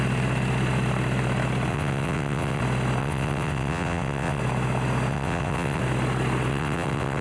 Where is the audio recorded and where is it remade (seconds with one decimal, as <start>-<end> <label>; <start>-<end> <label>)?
0.0-1.7 recorded; 1.7-2.6 remade; 2.6-3.0 recorded; 3.0-4.4 remade; 4.4-5.1 recorded; 5.1-5.8 remade; 5.8-6.5 recorded; 6.5-7.2 remade